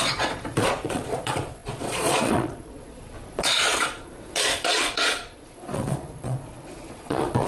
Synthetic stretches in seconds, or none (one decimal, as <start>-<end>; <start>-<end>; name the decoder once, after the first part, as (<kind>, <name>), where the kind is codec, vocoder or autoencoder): 0.0-7.5 (vocoder, Vocos)